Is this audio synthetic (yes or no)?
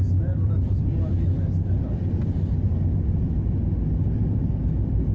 no